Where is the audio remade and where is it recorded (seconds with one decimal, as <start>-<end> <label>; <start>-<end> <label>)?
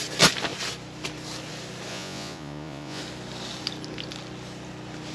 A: 0.0-1.9 recorded; 1.9-3.0 remade; 3.0-5.1 recorded